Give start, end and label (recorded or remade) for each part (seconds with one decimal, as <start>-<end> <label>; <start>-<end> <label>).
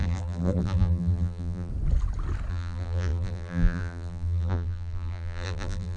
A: 0.0-1.7 remade; 1.7-2.5 recorded; 2.5-6.0 remade